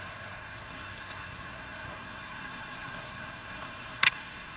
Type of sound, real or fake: fake